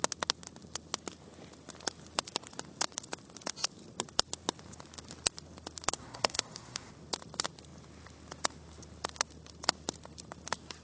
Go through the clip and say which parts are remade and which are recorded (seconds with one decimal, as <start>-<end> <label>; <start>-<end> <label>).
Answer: 0.0-6.0 recorded; 6.0-6.9 remade; 6.9-10.8 recorded